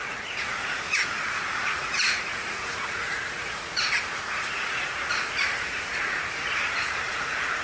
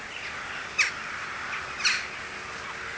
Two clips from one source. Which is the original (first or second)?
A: second